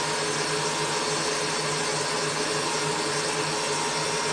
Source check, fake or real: real